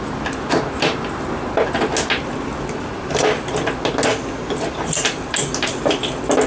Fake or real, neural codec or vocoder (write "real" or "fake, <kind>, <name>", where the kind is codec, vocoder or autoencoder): real